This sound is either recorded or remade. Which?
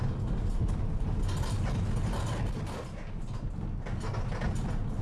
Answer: recorded